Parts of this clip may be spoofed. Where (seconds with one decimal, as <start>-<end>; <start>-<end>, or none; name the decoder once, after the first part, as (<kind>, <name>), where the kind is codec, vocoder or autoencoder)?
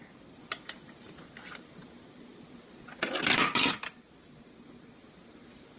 none